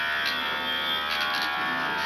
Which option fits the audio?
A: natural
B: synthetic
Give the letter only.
A